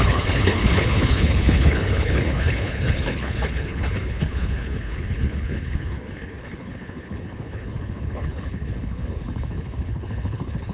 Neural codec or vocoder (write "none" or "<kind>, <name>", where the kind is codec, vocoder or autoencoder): codec, HILCodec